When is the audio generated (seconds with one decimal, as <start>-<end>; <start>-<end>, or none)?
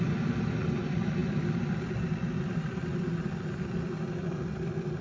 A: none